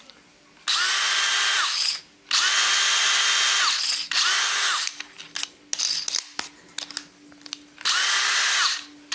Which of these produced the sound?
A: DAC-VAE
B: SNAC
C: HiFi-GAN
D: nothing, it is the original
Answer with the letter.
D